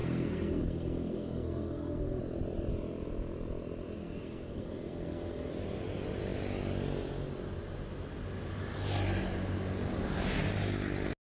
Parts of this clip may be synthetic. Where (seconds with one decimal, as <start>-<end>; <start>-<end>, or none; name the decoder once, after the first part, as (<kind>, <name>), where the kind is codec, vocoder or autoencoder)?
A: 0.0-2.2 (codec, SNAC); 4.0-5.5

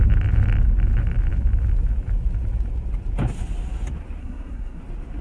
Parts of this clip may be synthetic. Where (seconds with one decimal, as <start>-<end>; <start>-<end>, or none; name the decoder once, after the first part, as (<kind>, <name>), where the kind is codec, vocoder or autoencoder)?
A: 4.2-4.8 (codec, SNAC)

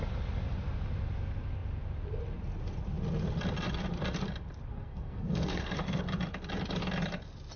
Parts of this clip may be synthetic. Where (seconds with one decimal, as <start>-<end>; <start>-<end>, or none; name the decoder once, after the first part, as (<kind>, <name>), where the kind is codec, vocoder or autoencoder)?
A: 4.7-6.0 (codec, SNAC)

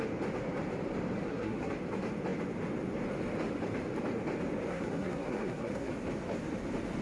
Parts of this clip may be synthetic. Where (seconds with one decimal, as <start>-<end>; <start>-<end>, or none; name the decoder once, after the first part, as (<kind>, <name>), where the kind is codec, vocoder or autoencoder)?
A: 1.2-1.7 (codec, SNAC); 4.7-5.9

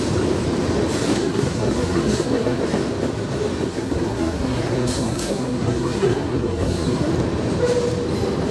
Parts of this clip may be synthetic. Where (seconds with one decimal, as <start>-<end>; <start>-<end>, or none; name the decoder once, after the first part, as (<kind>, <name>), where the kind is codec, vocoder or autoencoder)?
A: 1.1-2.6 (codec, SNAC); 3.7-7.1

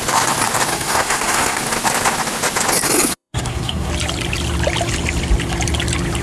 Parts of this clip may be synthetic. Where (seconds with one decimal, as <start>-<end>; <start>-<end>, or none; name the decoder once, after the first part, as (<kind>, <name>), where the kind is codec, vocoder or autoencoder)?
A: 0.7-1.6 (codec, SNAC); 3.1-3.9

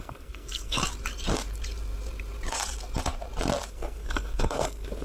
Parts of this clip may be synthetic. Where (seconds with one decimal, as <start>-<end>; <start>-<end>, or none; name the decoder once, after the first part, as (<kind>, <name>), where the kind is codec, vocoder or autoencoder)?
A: 0.0-0.8 (codec, SNAC); 3.7-5.0

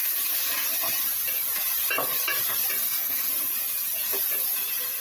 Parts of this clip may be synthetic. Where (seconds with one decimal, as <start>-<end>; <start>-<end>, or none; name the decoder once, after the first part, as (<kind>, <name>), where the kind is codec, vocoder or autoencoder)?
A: 2.8-3.3 (codec, SNAC)